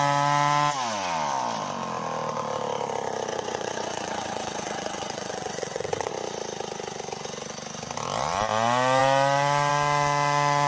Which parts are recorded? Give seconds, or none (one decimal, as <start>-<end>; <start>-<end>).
0.0-3.3; 6.1-10.7